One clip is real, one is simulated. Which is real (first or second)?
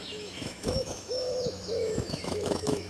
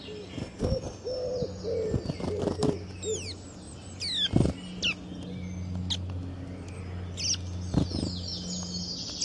second